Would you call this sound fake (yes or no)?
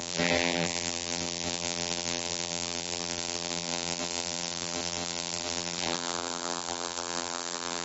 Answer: yes